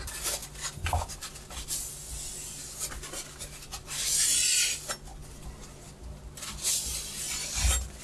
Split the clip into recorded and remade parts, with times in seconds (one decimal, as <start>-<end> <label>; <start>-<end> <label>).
0.0-8.0 recorded